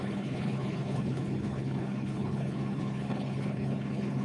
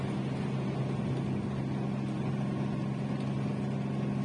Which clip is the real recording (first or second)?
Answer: second